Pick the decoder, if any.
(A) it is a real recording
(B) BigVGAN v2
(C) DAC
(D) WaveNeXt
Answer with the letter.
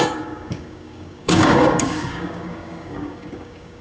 C